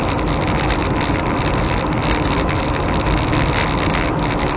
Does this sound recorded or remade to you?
recorded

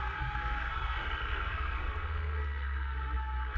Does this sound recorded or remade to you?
remade